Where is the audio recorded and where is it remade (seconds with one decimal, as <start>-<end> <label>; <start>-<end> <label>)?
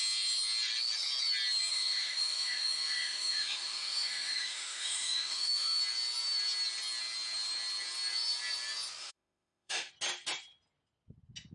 0.0-1.7 recorded; 1.7-5.8 remade; 5.8-9.0 recorded; 9.0-9.9 remade; 9.9-11.5 recorded